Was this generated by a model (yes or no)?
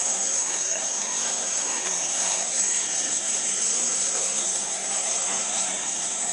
yes